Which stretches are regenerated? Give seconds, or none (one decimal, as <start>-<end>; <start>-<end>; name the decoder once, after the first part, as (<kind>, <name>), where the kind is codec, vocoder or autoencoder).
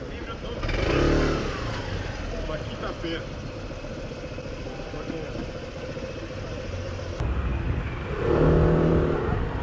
none